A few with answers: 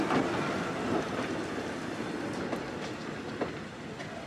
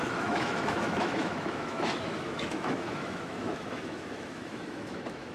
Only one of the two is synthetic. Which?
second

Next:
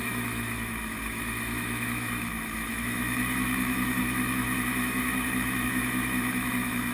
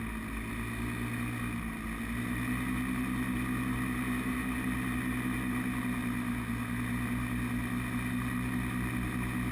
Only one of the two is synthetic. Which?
first